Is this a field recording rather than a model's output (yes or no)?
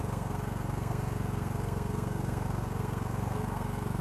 no